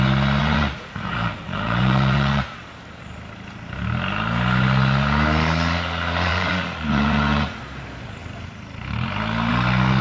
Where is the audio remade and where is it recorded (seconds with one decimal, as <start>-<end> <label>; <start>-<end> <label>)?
0.0-0.4 recorded; 0.4-2.6 remade; 2.6-6.3 recorded; 6.3-7.6 remade; 7.6-10.0 recorded